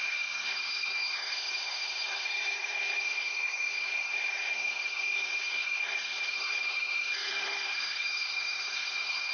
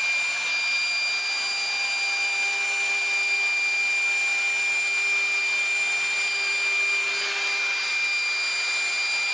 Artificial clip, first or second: first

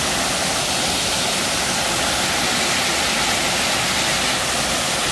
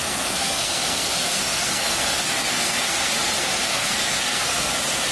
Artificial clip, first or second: second